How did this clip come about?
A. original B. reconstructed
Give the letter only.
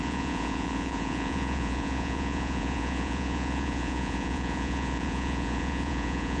B